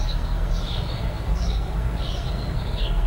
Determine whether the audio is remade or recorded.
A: remade